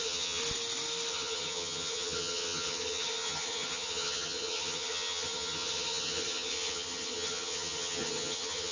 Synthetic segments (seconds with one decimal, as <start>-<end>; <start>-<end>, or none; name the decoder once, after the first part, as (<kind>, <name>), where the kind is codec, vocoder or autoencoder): 0.0-0.4 (vocoder, HiFi-GAN); 1.1-8.7